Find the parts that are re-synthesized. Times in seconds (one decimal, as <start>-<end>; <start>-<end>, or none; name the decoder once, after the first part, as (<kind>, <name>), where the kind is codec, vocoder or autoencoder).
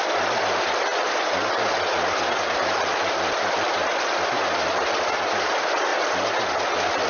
none